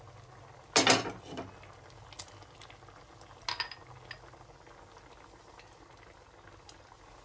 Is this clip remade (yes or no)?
no